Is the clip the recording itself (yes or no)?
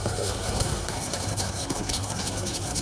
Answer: no